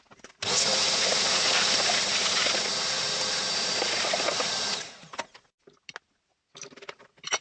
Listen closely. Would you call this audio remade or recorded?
recorded